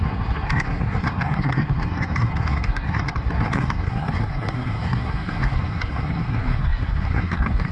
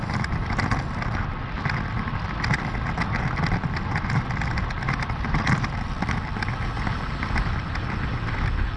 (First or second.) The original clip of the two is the second